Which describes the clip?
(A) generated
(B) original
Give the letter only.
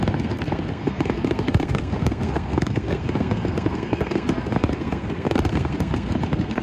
A